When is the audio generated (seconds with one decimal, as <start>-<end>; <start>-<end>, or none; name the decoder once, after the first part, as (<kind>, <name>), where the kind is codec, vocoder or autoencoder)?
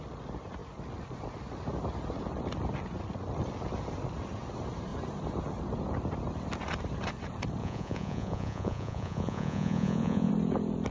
7.6-10.3 (vocoder, Vocos)